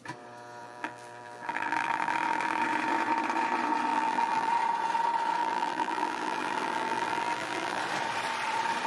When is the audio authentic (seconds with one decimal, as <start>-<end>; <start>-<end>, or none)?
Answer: 0.0-0.6; 2.6-3.9; 4.5-5.4; 7.8-8.9